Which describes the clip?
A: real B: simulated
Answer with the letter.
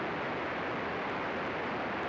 A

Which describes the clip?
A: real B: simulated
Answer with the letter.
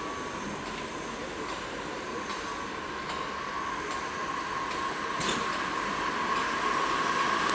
A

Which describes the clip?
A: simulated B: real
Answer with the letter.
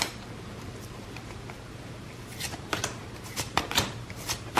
A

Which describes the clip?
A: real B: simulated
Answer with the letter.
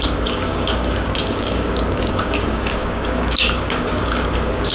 B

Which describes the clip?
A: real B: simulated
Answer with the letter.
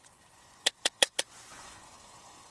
B